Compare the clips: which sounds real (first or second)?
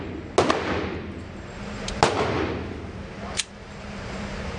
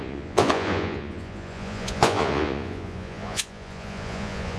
first